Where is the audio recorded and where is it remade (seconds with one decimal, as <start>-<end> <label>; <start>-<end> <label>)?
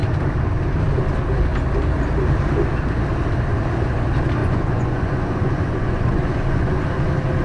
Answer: 0.0-4.4 recorded; 4.4-6.8 remade; 6.8-7.4 recorded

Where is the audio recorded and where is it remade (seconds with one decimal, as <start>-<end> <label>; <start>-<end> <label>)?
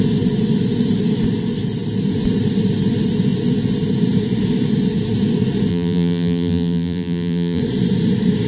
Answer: 0.0-5.7 recorded; 5.7-7.6 remade; 7.6-8.5 recorded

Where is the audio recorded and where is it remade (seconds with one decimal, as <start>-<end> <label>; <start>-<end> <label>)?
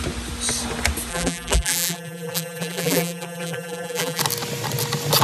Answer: 0.0-1.1 recorded; 1.1-4.2 remade; 4.2-5.2 recorded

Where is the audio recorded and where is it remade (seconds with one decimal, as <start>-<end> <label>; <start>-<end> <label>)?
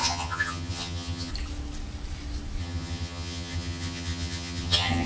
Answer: 0.0-1.3 remade; 1.3-2.6 recorded; 2.6-5.1 remade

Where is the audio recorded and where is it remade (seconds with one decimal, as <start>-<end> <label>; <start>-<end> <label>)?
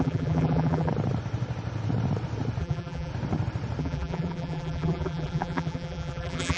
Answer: 0.0-0.9 remade; 0.9-2.6 recorded; 2.6-3.1 remade; 3.1-3.8 recorded; 3.8-6.6 remade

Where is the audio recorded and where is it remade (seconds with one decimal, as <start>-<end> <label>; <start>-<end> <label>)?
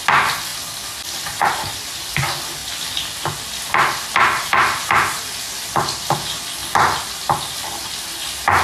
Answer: 0.0-8.6 recorded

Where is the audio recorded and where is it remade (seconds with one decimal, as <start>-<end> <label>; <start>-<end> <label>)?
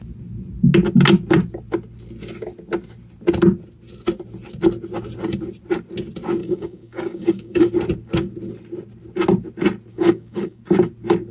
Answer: 0.0-6.4 recorded; 6.4-7.7 remade; 7.7-9.9 recorded; 9.9-10.6 remade; 10.6-11.3 recorded